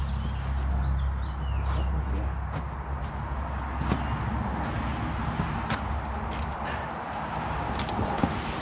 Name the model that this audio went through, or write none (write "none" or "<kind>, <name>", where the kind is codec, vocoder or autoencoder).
none